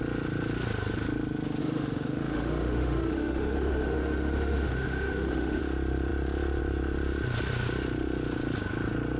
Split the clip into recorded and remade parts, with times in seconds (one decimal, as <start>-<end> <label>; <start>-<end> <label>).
0.0-1.6 recorded; 1.6-5.6 remade; 5.6-9.2 recorded